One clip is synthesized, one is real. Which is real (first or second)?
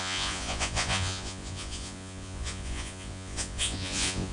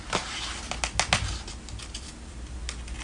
second